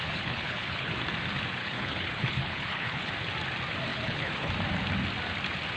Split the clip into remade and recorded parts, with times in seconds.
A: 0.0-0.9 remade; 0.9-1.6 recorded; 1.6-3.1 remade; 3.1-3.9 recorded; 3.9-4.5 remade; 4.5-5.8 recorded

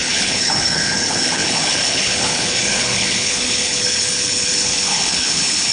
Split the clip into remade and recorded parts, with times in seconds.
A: 0.0-5.7 remade

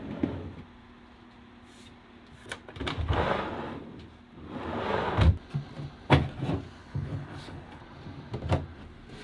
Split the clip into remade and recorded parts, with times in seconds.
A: 0.0-6.8 recorded; 6.8-7.8 remade; 7.8-9.2 recorded

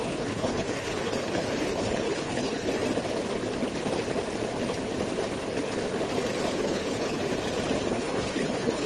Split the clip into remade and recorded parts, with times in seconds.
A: 0.0-2.7 remade; 2.7-6.4 recorded; 6.4-7.2 remade; 7.2-7.9 recorded; 7.9-8.9 remade

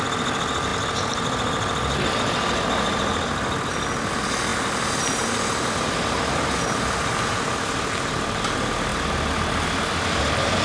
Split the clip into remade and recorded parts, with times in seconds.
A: 0.0-10.6 recorded

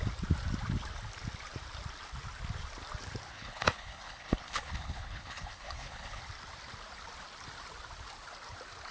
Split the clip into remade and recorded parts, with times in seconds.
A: 0.0-3.3 recorded; 3.3-6.2 remade; 6.2-8.9 recorded